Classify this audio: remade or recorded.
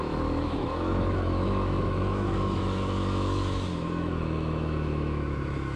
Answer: remade